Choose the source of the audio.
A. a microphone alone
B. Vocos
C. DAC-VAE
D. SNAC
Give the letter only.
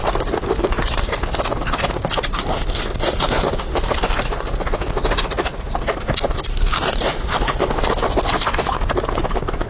A